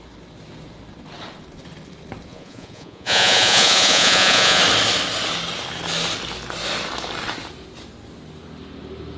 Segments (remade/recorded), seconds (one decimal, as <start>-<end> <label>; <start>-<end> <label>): 0.0-2.3 recorded; 2.3-4.6 remade; 4.6-9.2 recorded